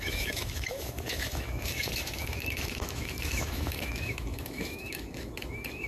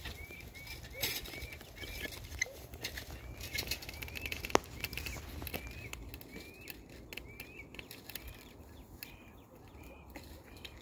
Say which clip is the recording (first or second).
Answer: second